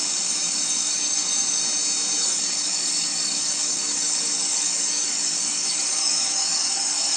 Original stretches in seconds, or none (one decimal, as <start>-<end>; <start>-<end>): 1.6-2.2